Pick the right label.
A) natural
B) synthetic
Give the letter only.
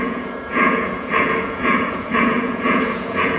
B